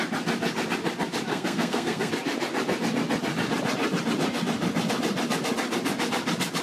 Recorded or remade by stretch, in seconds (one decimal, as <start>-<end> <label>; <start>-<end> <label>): 0.0-1.3 recorded; 1.3-2.1 remade; 2.1-6.6 recorded